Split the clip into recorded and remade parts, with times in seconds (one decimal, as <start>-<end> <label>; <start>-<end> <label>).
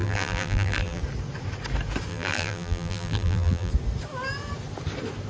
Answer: 0.0-1.0 remade; 1.0-2.1 recorded; 2.1-3.7 remade; 3.7-5.3 recorded